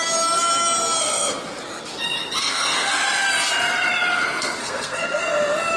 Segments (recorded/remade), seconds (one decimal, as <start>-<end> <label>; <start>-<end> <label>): 0.0-2.4 recorded; 2.4-2.9 remade; 2.9-4.6 recorded; 4.6-5.2 remade; 5.2-5.8 recorded